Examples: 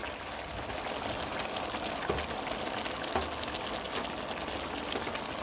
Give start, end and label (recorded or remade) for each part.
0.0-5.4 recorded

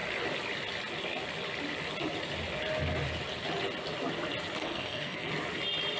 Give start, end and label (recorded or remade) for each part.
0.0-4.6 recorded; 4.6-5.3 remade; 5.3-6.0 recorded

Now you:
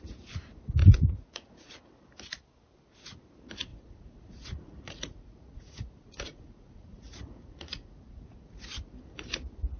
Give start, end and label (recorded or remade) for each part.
0.0-0.8 recorded; 0.8-1.7 remade; 1.7-3.7 recorded; 3.7-8.6 remade; 8.6-9.8 recorded

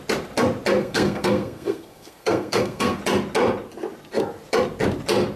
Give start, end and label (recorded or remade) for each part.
0.0-0.8 recorded; 0.8-3.0 remade; 3.0-5.4 recorded